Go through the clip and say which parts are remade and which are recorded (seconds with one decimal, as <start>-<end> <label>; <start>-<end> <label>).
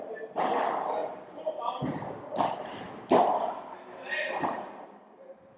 0.0-5.6 recorded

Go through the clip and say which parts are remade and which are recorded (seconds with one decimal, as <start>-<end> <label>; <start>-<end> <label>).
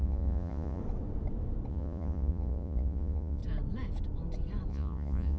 0.0-0.8 remade; 0.8-1.7 recorded; 1.7-3.4 remade; 3.4-4.7 recorded; 4.7-5.4 remade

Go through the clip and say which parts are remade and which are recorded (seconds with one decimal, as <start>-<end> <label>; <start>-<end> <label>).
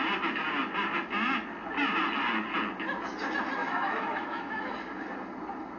0.0-3.6 recorded; 3.6-4.7 remade; 4.7-5.8 recorded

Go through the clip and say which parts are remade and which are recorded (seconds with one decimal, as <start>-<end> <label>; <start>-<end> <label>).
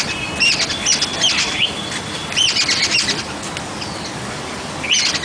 0.0-5.2 recorded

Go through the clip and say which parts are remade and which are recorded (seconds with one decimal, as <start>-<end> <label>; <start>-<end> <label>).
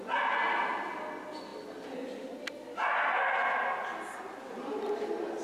0.0-5.4 recorded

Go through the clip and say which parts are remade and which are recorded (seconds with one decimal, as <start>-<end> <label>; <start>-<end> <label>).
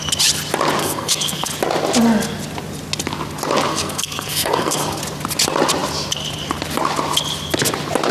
0.0-0.8 recorded; 0.8-1.5 remade; 1.5-3.7 recorded; 3.7-5.0 remade; 5.0-8.1 recorded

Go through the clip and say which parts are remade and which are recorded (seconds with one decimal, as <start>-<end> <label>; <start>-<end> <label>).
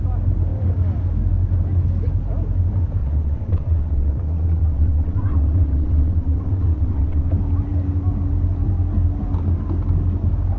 0.0-3.0 recorded; 3.0-7.3 remade; 7.3-10.6 recorded